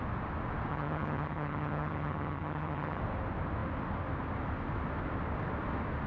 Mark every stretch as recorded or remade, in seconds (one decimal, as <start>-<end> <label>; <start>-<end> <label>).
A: 0.0-0.7 recorded; 0.7-3.0 remade; 3.0-6.1 recorded